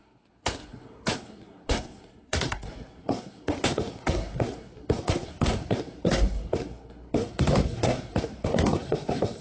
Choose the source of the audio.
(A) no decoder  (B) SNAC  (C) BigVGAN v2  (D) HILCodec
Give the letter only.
B